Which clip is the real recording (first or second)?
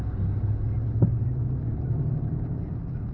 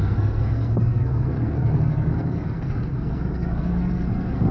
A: first